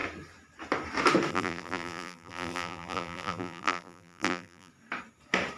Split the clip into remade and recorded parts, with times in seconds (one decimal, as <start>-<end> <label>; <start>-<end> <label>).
0.0-1.3 recorded; 1.3-4.7 remade; 4.7-5.6 recorded